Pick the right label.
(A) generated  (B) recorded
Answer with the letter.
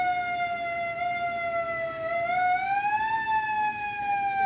B